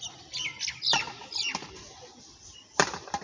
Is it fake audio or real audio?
real